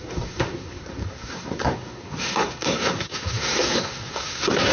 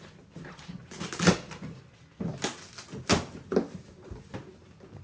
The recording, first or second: second